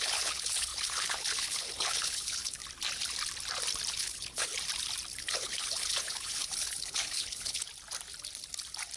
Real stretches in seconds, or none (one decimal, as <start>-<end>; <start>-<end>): 2.6-3.9; 4.5-5.2; 7.7-9.0

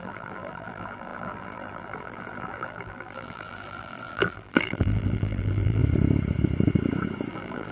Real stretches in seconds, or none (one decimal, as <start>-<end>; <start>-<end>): 5.8-7.3